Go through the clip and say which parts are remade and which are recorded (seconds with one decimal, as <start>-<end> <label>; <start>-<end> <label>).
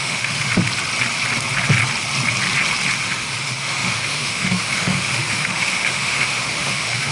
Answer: 0.0-0.5 remade; 0.5-3.0 recorded; 3.0-7.1 remade